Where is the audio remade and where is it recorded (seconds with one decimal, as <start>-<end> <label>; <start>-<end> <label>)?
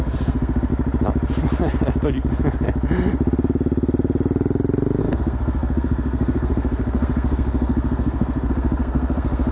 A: 0.0-0.7 remade; 0.7-5.0 recorded; 5.0-9.5 remade